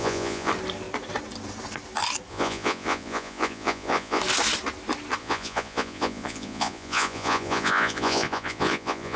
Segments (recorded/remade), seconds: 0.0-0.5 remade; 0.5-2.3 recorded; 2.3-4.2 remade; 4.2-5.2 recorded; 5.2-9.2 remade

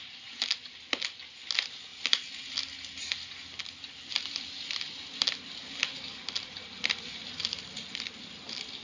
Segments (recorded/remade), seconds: 0.0-8.8 recorded

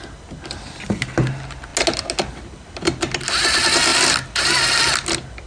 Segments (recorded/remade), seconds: 0.0-5.5 recorded